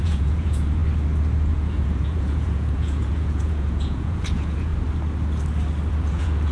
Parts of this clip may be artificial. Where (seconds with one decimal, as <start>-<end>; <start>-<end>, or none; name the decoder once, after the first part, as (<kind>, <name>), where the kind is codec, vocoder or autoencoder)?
0.0-0.8 (vocoder, Vocos); 1.5-4.7; 5.9-6.5